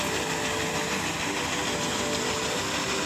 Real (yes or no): yes